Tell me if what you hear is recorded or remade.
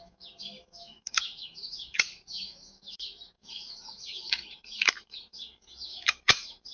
remade